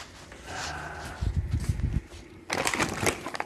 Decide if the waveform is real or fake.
real